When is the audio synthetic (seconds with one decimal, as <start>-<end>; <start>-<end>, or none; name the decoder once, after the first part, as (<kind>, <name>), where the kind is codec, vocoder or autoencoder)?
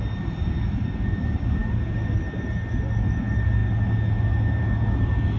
none